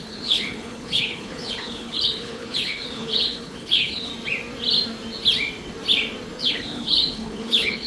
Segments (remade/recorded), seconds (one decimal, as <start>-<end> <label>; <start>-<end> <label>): 0.0-4.1 remade; 4.1-6.4 recorded; 6.4-7.9 remade